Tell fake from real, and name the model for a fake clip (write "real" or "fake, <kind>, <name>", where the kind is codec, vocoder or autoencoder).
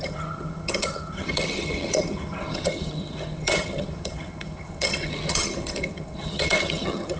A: fake, vocoder, HiFi-GAN